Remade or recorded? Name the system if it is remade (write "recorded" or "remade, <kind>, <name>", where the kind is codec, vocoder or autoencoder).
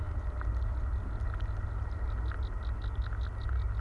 recorded